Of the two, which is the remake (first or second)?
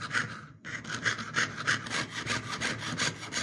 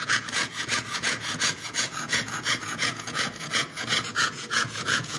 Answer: second